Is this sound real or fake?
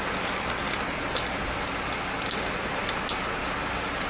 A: real